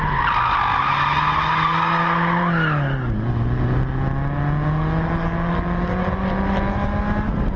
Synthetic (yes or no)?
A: no